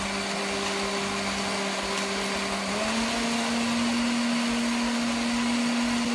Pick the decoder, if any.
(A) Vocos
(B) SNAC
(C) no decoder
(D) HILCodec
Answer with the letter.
C